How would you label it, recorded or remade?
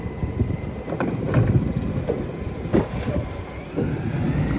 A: recorded